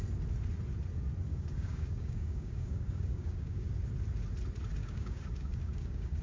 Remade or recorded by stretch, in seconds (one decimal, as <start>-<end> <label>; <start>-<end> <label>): 0.0-1.3 recorded; 1.3-3.7 remade; 3.7-4.8 recorded; 4.8-6.2 remade